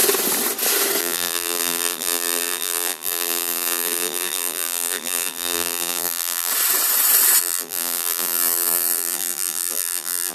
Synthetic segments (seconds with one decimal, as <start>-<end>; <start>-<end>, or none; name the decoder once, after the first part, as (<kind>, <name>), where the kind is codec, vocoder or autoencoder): 1.0-6.5 (vocoder, BigVGAN v2); 7.4-10.3